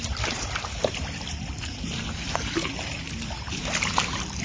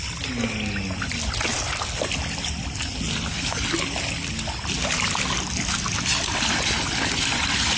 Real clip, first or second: second